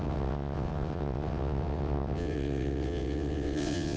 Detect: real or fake fake